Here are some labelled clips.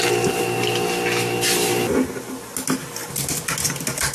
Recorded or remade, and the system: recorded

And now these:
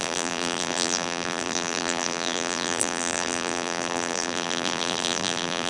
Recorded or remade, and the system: remade, vocoder, BigVGAN v2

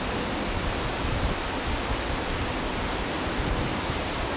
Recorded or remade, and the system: recorded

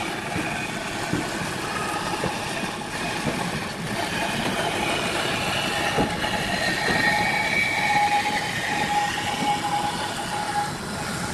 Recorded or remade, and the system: recorded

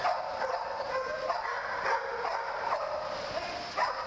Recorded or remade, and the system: recorded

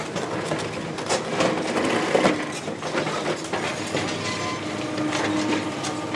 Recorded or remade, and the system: recorded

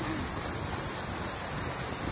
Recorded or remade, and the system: recorded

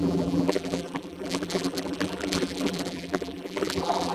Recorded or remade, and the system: remade, vocoder, BigVGAN v2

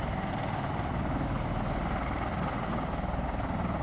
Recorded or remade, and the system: recorded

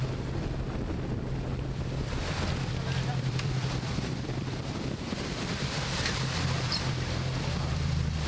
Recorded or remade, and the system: remade, vocoder, BigVGAN v2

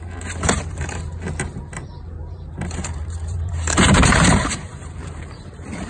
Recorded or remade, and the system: remade, vocoder, BigVGAN v2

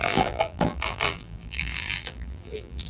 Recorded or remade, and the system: remade, vocoder, BigVGAN v2